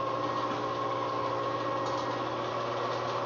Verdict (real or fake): real